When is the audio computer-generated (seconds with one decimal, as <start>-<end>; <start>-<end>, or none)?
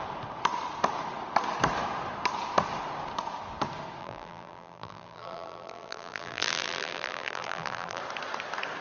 4.0-8.0